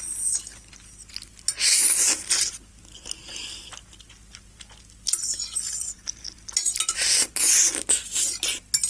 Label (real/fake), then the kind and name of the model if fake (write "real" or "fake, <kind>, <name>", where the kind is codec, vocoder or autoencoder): real